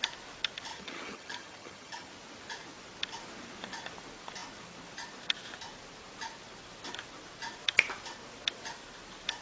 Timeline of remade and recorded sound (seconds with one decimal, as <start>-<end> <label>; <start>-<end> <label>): 0.0-0.7 recorded; 0.7-2.1 remade; 2.1-9.4 recorded